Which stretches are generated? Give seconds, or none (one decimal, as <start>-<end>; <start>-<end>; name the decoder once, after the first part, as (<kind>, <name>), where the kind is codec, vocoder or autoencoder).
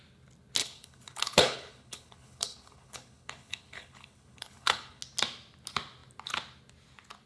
0.6-5.0 (codec, HILCodec)